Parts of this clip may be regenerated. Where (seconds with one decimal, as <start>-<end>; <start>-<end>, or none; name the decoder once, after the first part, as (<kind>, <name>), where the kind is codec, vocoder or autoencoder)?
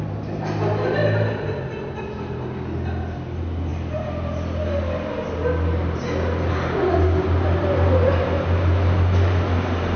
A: none